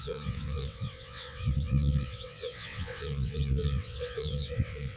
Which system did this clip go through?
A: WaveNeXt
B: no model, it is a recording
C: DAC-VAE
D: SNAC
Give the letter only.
A